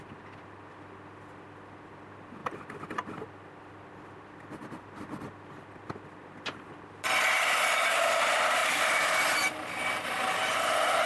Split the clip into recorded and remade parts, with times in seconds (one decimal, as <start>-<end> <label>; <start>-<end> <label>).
0.0-2.4 recorded; 2.4-3.9 remade; 3.9-8.6 recorded; 8.6-9.4 remade; 9.4-11.1 recorded